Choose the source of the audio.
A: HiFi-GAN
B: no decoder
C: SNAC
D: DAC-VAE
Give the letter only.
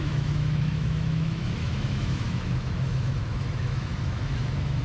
D